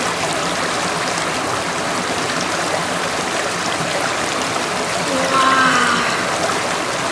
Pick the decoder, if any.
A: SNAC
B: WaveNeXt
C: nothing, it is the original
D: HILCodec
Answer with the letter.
C